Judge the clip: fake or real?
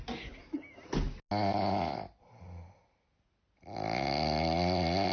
real